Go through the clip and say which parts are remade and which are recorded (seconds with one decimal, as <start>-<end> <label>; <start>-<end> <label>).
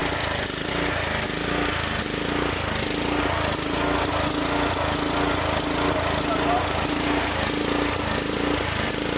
0.0-0.7 remade; 0.7-9.2 recorded